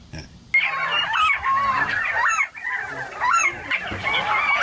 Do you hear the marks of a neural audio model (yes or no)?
no